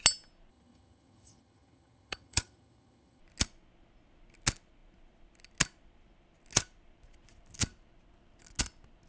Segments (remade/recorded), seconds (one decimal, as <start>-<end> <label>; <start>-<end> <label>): 0.0-0.5 recorded; 0.5-3.2 remade; 3.2-9.1 recorded